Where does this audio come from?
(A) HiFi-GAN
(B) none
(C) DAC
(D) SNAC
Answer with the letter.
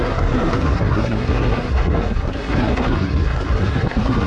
D